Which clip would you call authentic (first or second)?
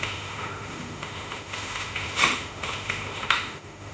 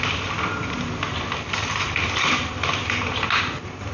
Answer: second